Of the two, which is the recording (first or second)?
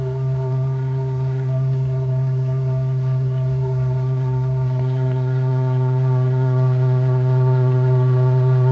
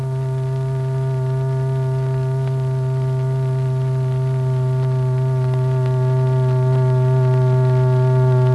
second